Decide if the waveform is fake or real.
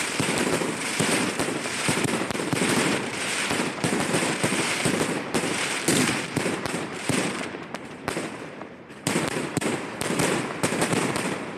fake